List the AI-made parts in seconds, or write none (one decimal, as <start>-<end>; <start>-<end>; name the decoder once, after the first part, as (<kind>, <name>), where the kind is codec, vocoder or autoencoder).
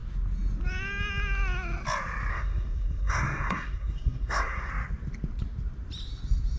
2.3-4.7 (codec, SNAC)